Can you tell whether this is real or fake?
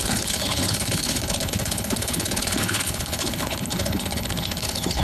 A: fake